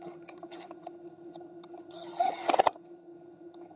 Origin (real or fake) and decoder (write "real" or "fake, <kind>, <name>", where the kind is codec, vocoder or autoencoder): fake, vocoder, HiFi-GAN